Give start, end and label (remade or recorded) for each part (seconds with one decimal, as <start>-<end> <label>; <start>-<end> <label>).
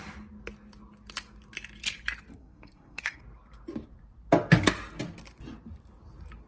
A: 0.0-2.3 recorded; 2.3-3.2 remade; 3.2-6.5 recorded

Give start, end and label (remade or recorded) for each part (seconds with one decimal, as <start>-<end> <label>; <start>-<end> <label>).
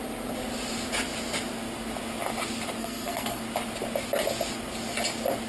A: 0.0-2.8 recorded; 2.8-3.4 remade; 3.4-5.5 recorded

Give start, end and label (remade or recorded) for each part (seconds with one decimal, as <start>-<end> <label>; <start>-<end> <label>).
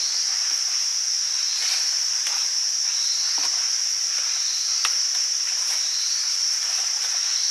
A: 0.0-1.0 remade; 1.0-1.8 recorded; 1.8-7.5 remade